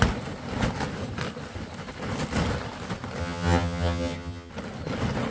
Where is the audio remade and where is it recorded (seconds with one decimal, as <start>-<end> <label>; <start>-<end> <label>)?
0.0-3.2 recorded; 3.2-4.5 remade; 4.5-5.3 recorded